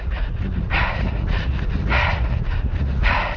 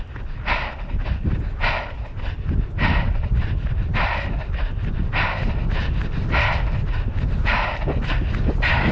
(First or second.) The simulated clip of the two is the first